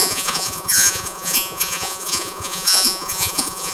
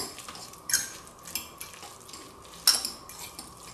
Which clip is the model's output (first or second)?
first